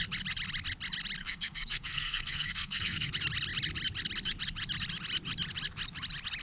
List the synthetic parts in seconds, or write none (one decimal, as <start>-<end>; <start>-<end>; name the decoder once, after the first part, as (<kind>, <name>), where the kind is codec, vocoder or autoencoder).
1.2-3.1 (codec, SNAC)